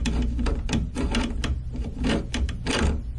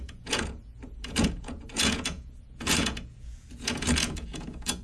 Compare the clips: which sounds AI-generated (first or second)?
second